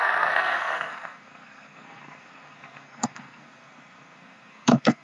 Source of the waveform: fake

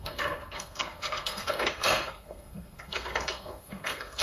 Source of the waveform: fake